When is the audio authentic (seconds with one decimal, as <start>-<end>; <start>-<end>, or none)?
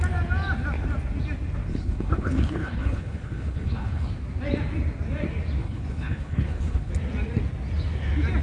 0.0-1.7; 4.1-5.6; 6.9-8.4